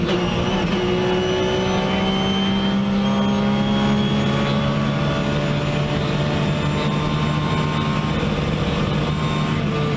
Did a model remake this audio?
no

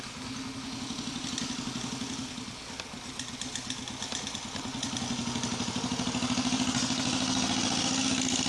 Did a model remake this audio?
no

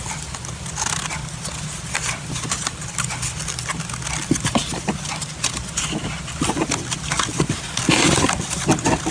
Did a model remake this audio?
no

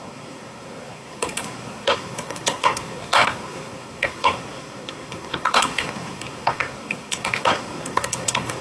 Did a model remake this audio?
yes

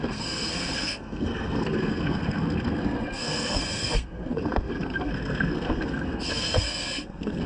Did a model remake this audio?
yes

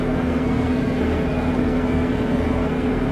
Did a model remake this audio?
yes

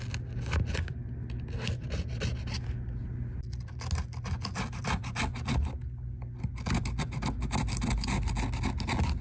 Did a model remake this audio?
no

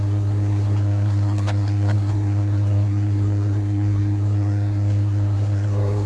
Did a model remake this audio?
yes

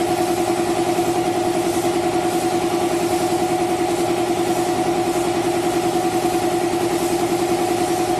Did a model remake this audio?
no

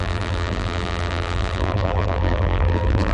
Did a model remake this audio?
yes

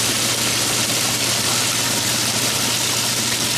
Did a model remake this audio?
no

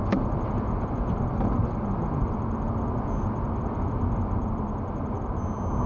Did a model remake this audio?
no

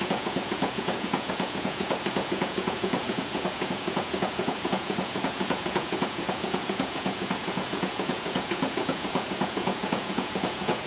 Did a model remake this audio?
yes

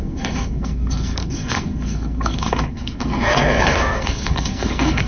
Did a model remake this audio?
yes